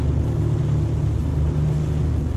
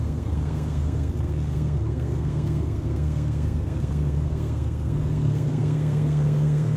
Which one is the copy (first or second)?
second